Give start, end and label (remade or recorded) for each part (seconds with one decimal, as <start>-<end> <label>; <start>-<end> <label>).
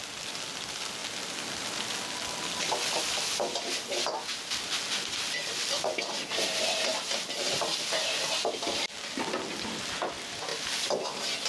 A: 0.0-11.5 recorded